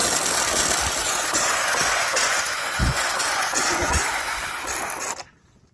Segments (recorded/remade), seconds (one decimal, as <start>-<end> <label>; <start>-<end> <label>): 0.0-1.0 recorded; 1.0-4.4 remade; 4.4-5.7 recorded